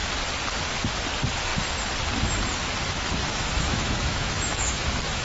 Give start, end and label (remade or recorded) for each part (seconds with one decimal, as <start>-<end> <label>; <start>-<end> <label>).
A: 0.0-3.2 recorded; 3.2-5.2 remade